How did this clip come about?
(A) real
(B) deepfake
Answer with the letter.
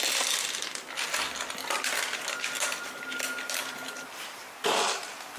A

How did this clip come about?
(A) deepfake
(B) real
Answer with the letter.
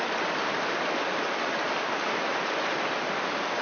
B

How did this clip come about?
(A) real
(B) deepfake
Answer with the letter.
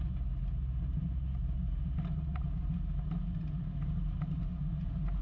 A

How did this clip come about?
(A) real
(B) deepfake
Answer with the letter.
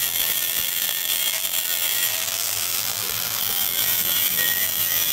B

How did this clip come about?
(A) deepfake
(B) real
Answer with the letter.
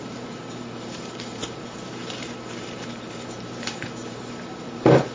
A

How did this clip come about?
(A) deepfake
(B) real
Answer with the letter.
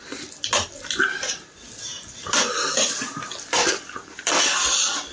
A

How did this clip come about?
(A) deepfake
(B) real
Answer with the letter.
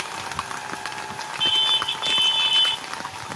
B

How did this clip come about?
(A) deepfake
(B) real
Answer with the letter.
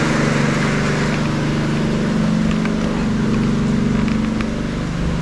B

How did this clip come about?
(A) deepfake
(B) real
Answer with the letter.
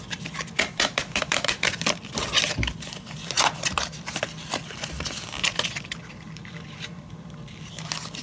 A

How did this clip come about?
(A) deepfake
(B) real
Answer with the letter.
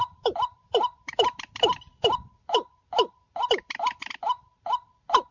A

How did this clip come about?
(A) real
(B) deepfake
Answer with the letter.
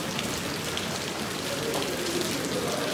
A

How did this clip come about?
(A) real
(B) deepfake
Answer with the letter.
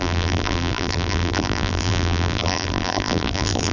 B